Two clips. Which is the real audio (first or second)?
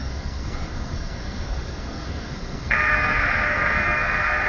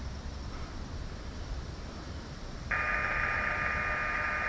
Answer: second